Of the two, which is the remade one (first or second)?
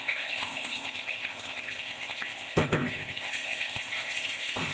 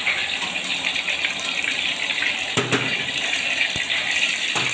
first